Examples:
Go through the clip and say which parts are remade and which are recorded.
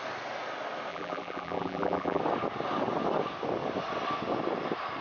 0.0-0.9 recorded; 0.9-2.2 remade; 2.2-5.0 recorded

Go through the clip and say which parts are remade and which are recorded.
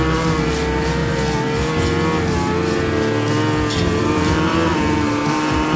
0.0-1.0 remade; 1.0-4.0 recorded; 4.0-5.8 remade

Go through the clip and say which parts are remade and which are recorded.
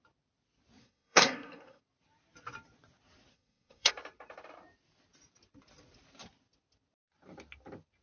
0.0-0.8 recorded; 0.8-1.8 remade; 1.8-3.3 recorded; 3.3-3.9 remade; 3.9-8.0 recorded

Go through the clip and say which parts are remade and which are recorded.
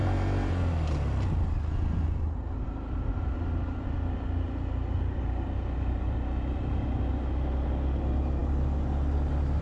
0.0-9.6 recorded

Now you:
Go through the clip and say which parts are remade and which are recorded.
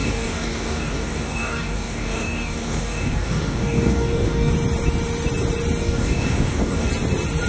0.0-4.5 remade; 4.5-5.8 recorded; 5.8-6.9 remade; 6.9-7.5 recorded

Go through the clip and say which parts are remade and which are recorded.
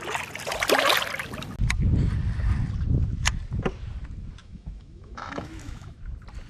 0.0-4.4 recorded; 4.4-6.0 remade; 6.0-6.5 recorded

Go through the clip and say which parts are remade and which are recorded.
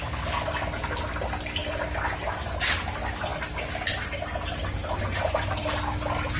0.0-6.4 recorded